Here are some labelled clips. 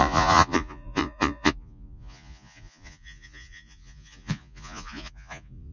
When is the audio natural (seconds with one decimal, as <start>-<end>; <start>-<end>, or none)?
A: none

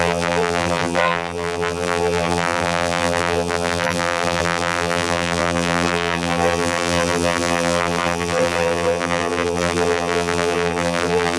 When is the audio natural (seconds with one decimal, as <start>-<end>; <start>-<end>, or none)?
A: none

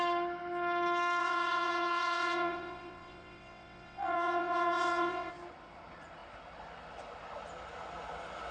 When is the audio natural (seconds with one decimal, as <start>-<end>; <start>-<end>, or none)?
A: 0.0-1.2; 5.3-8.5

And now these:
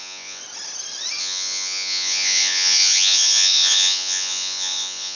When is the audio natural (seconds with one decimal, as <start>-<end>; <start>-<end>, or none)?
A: 0.4-1.2

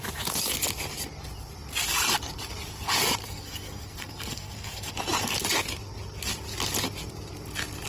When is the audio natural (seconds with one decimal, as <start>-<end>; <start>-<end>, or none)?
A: 0.0-3.2; 4.9-7.9

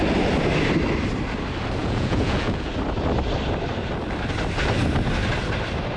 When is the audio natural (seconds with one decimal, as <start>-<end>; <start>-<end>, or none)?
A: 0.0-1.8; 2.7-6.0

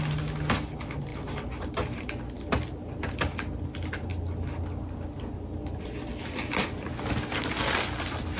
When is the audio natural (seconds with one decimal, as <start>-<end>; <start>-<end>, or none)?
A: 0.0-8.4

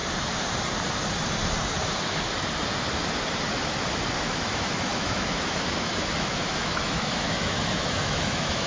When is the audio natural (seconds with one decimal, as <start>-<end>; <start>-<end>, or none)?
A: 0.0-4.2